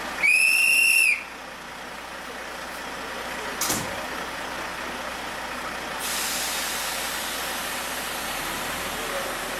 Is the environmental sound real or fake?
real